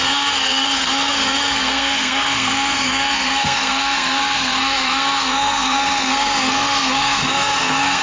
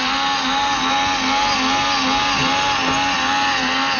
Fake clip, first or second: first